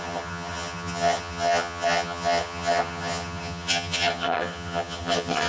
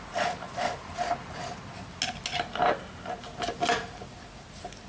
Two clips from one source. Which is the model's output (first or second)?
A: first